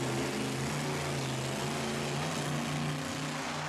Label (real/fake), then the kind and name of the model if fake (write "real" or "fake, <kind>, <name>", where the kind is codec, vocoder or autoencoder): real